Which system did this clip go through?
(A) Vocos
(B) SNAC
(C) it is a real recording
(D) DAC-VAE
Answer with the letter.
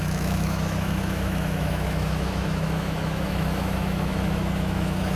D